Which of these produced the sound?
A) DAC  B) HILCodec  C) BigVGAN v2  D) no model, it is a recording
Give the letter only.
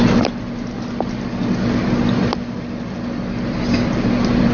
C